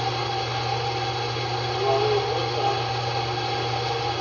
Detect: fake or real real